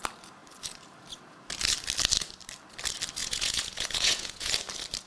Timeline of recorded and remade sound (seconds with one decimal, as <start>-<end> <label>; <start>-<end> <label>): 0.0-3.2 recorded; 3.2-4.5 remade; 4.5-5.1 recorded